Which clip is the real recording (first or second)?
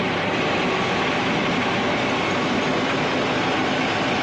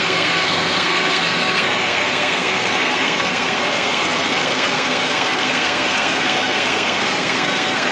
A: first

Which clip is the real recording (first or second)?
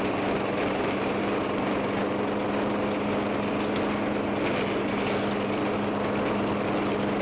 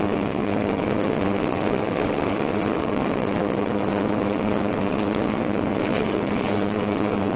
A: first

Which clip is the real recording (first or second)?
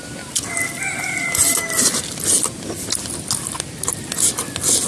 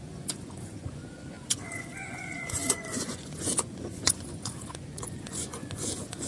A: first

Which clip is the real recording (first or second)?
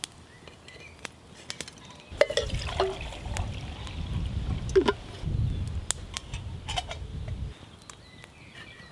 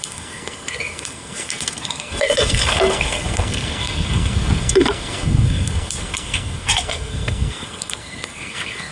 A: first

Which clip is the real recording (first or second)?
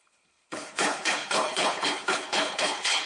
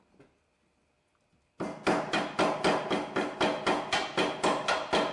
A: second